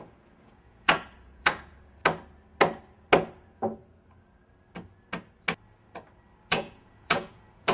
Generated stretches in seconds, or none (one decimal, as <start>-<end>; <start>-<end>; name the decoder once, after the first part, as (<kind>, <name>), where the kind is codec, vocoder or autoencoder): 0.0-2.0 (vocoder, Vocos); 6.5-7.7